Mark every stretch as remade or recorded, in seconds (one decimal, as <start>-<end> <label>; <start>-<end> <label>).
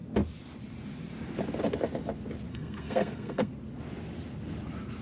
0.0-2.5 recorded; 2.5-3.5 remade; 3.5-5.0 recorded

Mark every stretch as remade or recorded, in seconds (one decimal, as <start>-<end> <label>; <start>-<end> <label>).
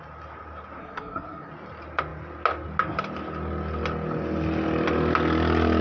0.0-0.8 recorded; 0.8-1.5 remade; 1.5-5.8 recorded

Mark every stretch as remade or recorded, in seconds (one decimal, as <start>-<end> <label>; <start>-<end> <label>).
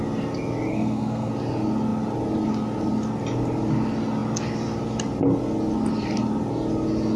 0.0-0.7 recorded; 0.7-1.3 remade; 1.3-7.2 recorded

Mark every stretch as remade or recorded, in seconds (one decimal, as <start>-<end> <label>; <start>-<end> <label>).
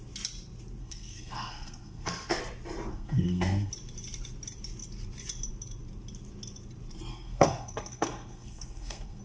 0.0-0.8 recorded; 0.8-2.4 remade; 2.4-2.9 recorded; 2.9-3.7 remade; 3.7-7.1 recorded; 7.1-9.2 remade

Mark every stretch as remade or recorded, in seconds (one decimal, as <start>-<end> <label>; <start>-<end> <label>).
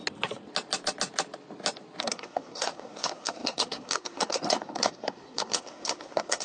0.0-2.0 recorded; 2.0-6.4 remade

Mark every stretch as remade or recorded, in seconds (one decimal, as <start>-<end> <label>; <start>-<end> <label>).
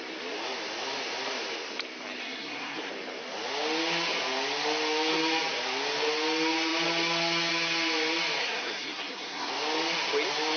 0.0-2.2 recorded; 2.2-2.9 remade; 2.9-8.4 recorded; 8.4-9.5 remade; 9.5-10.6 recorded